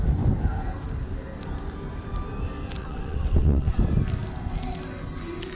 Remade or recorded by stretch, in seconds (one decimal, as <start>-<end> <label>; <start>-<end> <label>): 0.0-2.8 recorded; 2.8-3.8 remade; 3.8-5.6 recorded